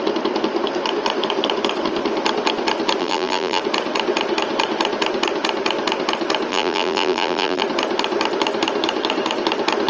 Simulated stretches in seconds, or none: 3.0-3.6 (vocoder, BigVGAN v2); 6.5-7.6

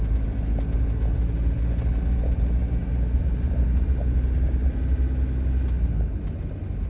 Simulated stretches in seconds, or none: none